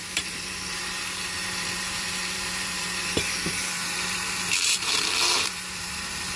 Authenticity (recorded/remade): remade